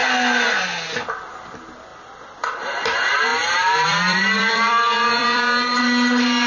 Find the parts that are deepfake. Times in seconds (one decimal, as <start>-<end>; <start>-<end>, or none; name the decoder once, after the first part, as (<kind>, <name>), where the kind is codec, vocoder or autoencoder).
1.9-2.5 (vocoder, BigVGAN v2); 3.3-5.8